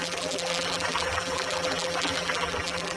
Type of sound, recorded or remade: remade